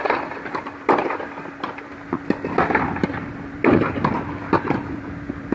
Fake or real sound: real